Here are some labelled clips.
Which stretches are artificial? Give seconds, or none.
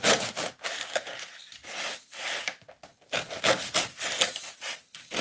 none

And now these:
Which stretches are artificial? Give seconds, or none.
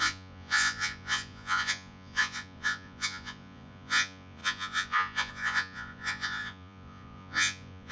0.0-7.9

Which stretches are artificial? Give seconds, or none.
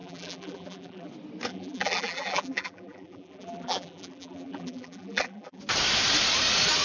0.0-1.1; 1.5-5.6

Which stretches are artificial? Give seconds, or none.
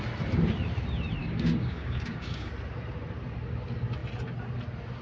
1.2-2.5